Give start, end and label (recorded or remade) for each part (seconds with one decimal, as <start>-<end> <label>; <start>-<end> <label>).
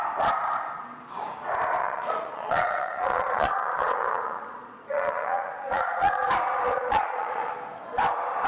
0.0-1.8 recorded; 1.8-6.3 remade; 6.3-6.7 recorded; 6.7-7.5 remade; 7.5-8.5 recorded